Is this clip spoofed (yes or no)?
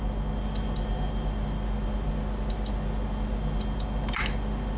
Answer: no